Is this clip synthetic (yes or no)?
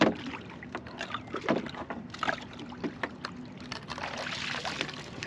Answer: no